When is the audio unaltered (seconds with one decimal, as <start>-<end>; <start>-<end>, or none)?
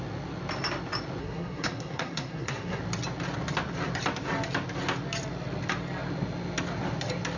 0.0-1.2; 2.8-7.4